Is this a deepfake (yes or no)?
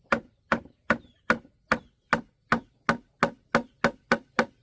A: no